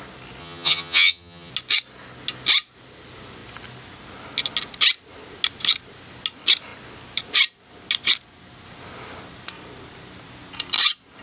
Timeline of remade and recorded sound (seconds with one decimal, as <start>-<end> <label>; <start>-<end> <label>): 0.0-0.4 recorded; 0.4-1.5 remade; 1.5-11.2 recorded

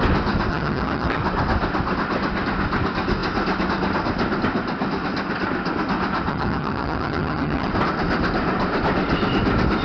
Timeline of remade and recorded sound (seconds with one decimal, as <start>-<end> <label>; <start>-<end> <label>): 0.0-0.5 recorded; 0.5-1.2 remade; 1.2-6.3 recorded; 6.3-7.7 remade; 7.7-9.8 recorded

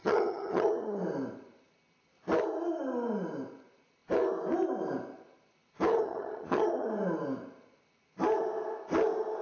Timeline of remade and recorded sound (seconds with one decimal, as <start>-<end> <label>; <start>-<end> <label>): 0.0-1.0 remade; 1.0-5.9 recorded; 5.9-6.9 remade; 6.9-9.4 recorded

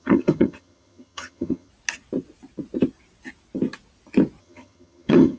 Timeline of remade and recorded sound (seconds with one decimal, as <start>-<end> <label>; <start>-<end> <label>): 0.0-1.7 remade; 1.7-4.4 recorded; 4.4-5.4 remade

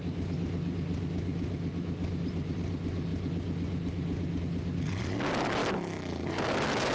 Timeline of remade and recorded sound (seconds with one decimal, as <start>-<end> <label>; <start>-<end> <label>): 0.0-6.9 recorded

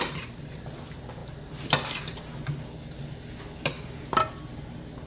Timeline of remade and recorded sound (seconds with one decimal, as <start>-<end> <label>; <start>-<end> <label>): 0.0-5.1 recorded